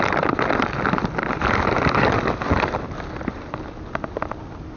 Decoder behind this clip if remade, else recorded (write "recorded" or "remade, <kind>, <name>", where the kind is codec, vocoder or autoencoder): recorded